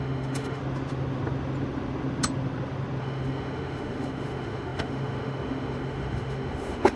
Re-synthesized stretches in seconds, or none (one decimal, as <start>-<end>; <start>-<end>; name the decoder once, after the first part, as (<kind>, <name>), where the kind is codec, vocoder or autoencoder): 0.0-0.6 (autoencoder, DAC-VAE); 3.0-7.0

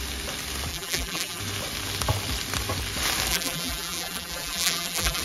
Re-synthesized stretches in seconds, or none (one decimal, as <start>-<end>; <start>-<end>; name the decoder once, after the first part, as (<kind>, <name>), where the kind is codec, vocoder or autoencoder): 0.7-1.4 (vocoder, BigVGAN v2); 3.3-5.2

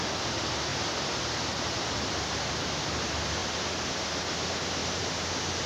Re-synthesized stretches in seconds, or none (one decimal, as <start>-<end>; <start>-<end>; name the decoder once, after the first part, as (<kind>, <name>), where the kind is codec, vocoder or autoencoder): 4.8-5.7 (vocoder, BigVGAN v2)